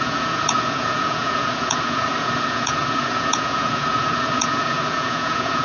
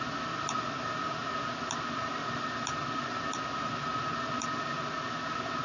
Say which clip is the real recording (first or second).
second